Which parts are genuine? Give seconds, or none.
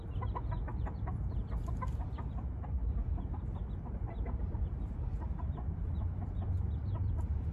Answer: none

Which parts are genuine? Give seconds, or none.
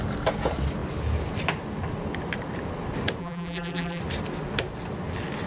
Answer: 0.0-3.2; 4.0-5.5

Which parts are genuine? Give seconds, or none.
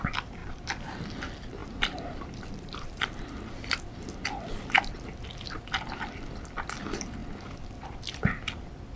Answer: 0.0-0.4; 1.0-1.6; 3.6-9.0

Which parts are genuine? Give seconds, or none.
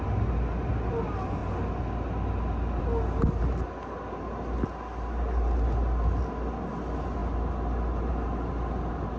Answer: 0.0-9.2